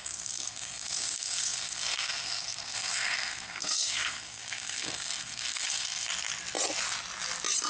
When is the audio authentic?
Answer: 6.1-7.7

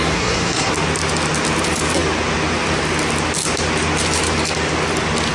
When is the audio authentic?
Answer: 0.7-5.3

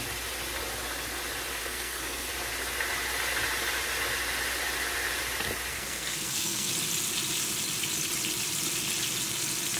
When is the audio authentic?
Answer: 0.0-1.6; 2.3-5.7; 6.7-9.8

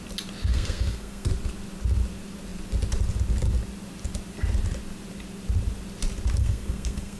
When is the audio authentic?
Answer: 0.0-0.5; 1.3-6.4